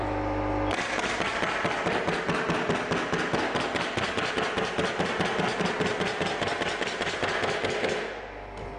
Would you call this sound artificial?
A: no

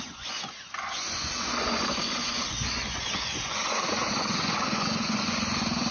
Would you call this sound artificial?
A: yes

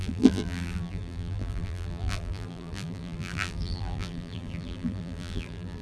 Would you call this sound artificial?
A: yes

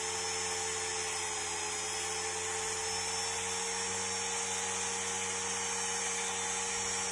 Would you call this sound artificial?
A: no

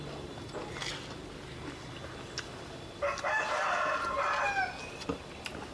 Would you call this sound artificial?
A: no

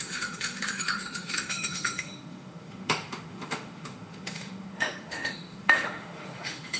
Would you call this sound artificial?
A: yes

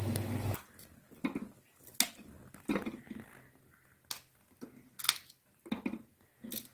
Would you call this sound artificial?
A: no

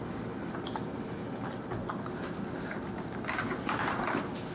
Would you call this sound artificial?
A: no